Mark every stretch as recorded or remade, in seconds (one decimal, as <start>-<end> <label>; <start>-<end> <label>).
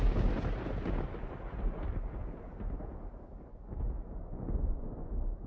0.0-4.2 recorded; 4.2-5.1 remade; 5.1-5.5 recorded